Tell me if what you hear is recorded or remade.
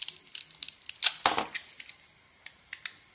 recorded